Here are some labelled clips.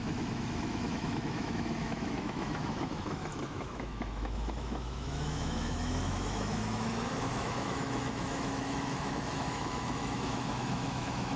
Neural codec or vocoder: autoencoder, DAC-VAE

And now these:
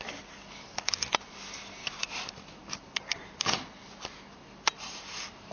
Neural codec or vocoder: none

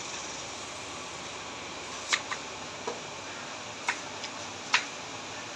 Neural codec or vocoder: none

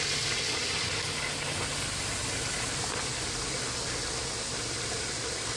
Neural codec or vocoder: none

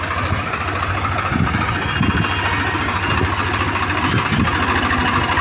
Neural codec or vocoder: none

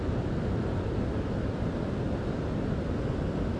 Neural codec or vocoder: none